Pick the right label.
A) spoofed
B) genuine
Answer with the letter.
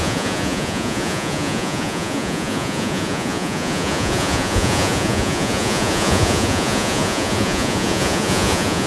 A